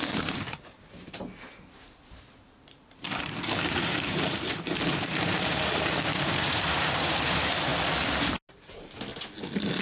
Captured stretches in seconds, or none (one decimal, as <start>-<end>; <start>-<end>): 7.7-9.8